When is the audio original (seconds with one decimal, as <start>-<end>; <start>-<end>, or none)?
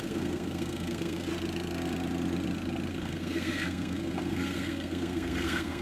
1.3-2.9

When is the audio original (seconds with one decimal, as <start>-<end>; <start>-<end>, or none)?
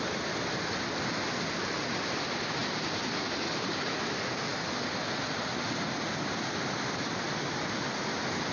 0.0-8.5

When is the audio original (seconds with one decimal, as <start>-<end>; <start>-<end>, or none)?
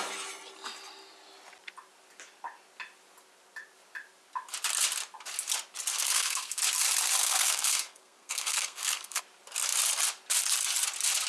0.0-5.9; 6.6-7.2; 9.2-11.3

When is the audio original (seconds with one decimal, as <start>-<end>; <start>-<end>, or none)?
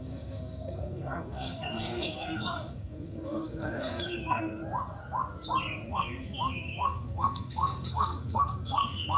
4.6-5.9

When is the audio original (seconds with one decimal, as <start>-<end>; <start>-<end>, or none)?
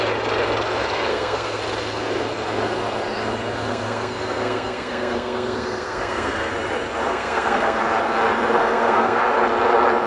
0.0-1.1; 1.6-3.7; 6.5-7.1; 7.8-8.6; 9.2-10.1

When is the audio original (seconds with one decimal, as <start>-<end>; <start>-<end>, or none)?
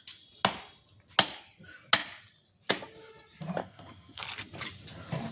0.0-3.6; 4.2-5.3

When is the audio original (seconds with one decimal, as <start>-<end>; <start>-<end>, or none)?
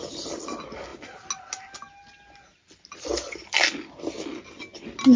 0.0-5.2